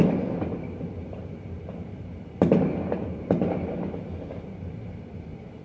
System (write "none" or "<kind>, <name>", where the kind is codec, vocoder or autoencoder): none